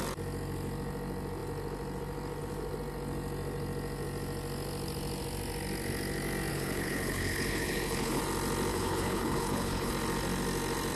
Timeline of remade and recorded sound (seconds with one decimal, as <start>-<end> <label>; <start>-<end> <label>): 0.0-6.5 recorded; 6.5-8.2 remade; 8.2-8.7 recorded; 8.7-9.9 remade; 9.9-11.0 recorded